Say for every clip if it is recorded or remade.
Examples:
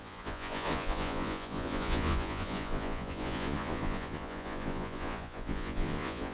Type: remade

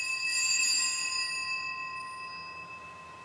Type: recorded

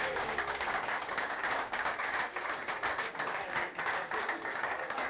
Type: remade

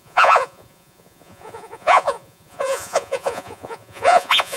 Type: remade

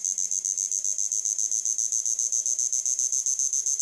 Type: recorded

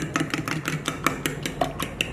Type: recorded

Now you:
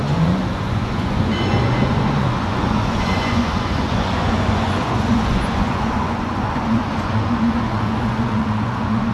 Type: remade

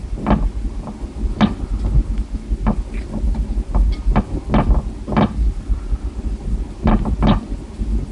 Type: recorded